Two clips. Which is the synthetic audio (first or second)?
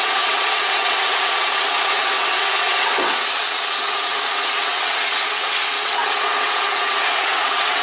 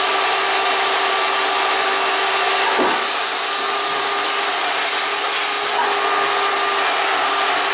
first